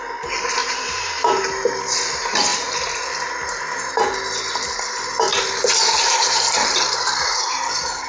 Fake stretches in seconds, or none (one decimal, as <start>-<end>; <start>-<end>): 0.6-1.1; 5.3-7.6